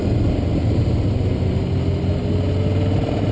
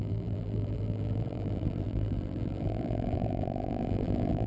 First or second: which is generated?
second